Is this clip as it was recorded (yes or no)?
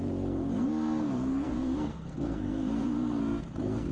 no